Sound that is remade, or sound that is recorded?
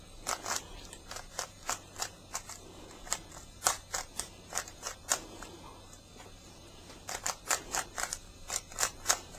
remade